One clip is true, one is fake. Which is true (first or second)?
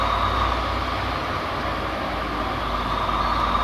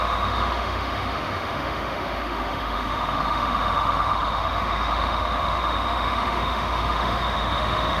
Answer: first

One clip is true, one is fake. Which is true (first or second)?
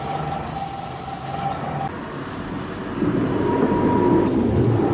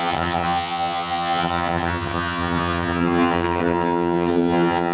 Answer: first